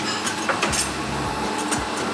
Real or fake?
real